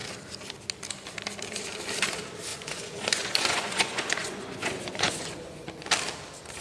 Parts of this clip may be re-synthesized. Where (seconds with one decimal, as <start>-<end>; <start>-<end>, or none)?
2.5-5.9